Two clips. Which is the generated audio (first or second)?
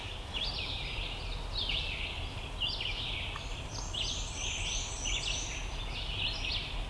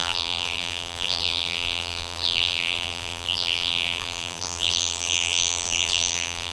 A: second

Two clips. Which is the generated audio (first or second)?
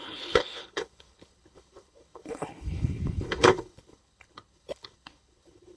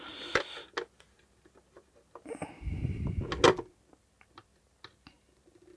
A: first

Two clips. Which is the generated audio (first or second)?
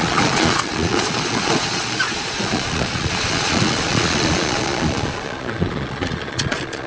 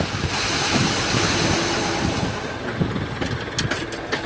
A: first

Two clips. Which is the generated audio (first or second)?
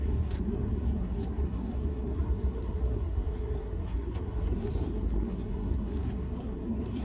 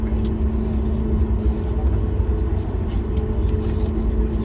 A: first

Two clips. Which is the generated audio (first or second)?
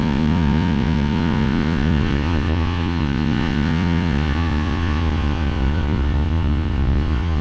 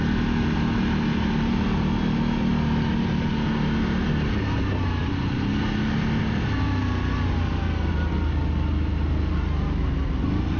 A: first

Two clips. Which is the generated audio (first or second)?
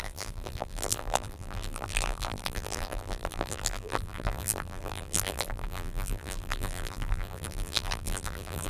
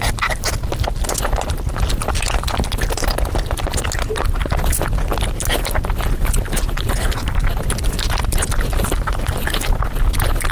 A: first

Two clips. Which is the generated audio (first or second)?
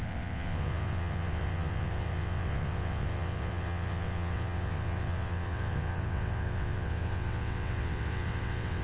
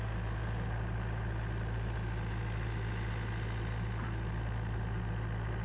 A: first